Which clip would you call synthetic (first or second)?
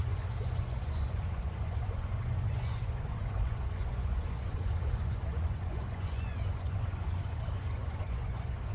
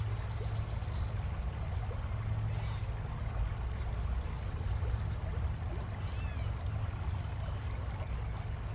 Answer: first